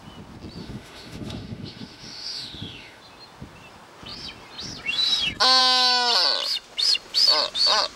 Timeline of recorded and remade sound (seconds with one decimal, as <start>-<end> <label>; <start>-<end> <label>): 0.0-0.6 recorded; 0.6-3.0 remade; 3.0-8.0 recorded